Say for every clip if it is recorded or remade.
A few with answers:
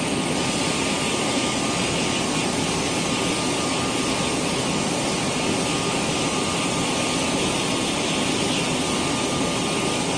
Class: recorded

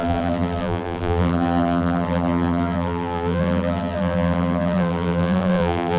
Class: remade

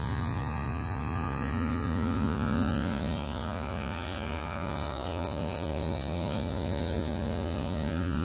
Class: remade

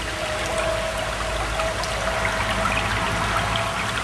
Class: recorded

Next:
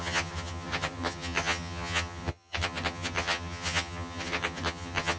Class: remade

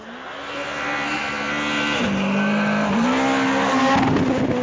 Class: recorded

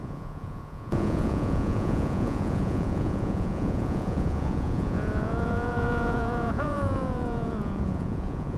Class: remade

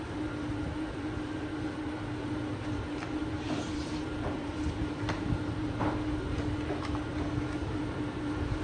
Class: remade